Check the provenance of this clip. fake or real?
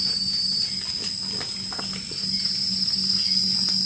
real